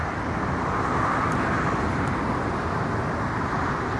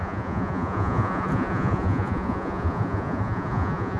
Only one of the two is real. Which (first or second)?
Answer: first